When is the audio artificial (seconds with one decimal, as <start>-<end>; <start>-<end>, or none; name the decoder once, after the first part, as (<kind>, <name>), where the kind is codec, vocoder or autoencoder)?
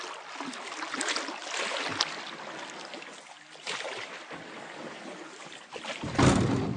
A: none